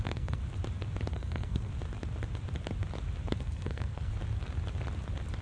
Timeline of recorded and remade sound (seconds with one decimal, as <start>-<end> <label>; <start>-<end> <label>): 0.0-0.4 remade; 0.4-1.1 recorded; 1.1-1.7 remade; 1.7-3.4 recorded; 3.4-4.1 remade; 4.1-5.4 recorded